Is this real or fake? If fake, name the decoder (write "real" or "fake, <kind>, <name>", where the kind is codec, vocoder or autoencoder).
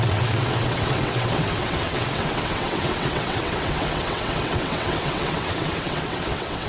fake, vocoder, WaveNeXt